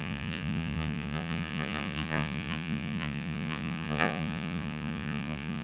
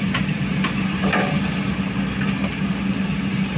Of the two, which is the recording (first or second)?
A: second